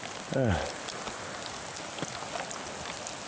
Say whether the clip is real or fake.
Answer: real